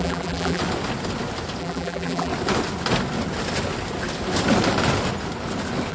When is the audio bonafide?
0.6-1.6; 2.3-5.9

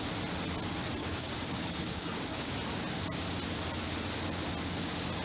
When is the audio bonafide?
0.0-1.0; 2.5-5.2

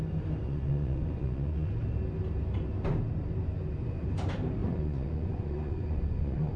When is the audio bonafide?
0.0-0.4; 1.7-4.6

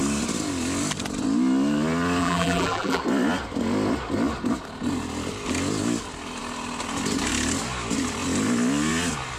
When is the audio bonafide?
0.0-2.2; 3.0-9.4

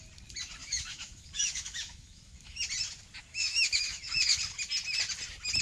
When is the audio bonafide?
0.0-0.6; 2.6-3.2; 4.4-5.6

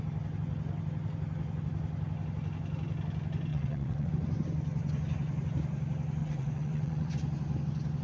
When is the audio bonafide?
0.0-3.5; 4.1-6.2; 7.1-8.0

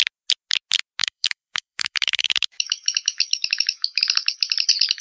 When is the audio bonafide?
0.0-1.0; 4.0-5.0

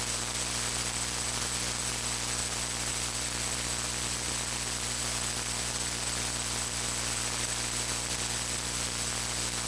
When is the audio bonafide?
0.0-9.7